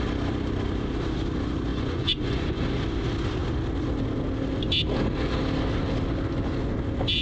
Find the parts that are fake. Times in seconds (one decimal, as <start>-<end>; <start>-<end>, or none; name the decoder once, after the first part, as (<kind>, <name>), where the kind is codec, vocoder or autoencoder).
1.7-2.7 (vocoder, Vocos)